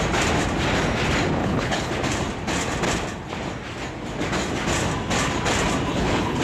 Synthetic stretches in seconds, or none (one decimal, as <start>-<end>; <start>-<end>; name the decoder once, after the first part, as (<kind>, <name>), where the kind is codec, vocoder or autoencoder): 1.4-1.9 (codec, HILCodec); 5.9-6.4